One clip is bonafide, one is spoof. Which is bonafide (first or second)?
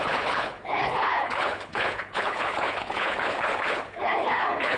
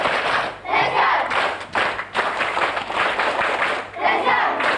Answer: second